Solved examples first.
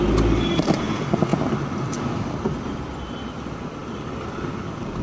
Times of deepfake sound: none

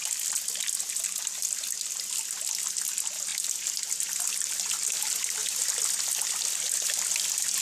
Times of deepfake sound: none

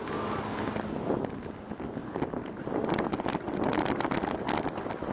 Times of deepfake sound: none

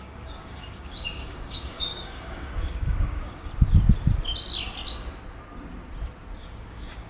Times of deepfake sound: 0.0-3.5 (codec, DAC); 6.4-7.1

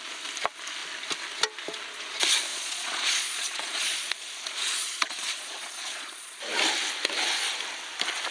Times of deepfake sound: 2.5-6.4 (vocoder, Vocos)